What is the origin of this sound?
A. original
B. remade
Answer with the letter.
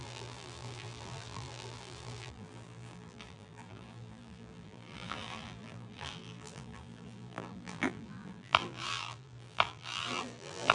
B